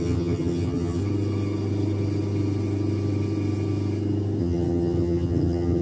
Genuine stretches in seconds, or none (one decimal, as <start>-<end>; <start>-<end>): 1.0-4.4